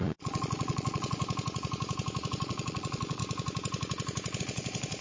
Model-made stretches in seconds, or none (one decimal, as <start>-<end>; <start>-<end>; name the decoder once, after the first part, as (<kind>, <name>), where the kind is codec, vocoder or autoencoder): 0.0-1.2 (vocoder, Vocos); 2.3-3.2; 4.4-5.0

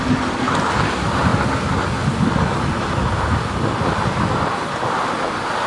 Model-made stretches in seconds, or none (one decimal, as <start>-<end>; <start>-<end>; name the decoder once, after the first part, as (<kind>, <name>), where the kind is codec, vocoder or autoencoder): none

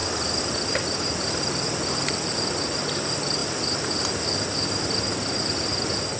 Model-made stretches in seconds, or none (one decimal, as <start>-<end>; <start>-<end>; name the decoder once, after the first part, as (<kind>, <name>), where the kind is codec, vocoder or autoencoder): 0.0-2.3 (vocoder, BigVGAN v2); 3.4-4.5

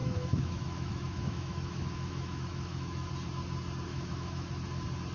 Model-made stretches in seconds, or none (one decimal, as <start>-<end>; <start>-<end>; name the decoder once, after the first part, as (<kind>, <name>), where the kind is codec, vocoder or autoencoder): 0.0-3.1 (autoencoder, DAC-VAE); 3.9-4.5